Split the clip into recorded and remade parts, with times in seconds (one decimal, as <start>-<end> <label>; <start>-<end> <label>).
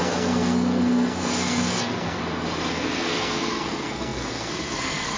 0.0-2.2 remade; 2.2-2.7 recorded; 2.7-5.2 remade